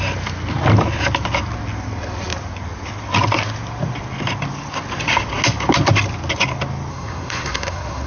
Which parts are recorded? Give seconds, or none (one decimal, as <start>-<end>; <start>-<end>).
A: 0.0-6.9